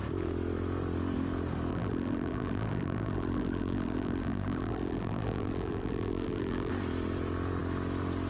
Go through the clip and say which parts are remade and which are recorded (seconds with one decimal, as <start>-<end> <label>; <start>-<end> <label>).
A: 0.0-1.7 recorded; 1.7-6.7 remade; 6.7-8.3 recorded